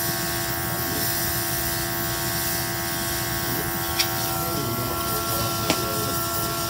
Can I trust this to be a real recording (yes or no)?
yes